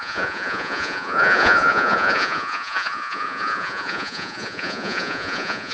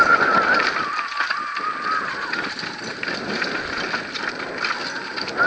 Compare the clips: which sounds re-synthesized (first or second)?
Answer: first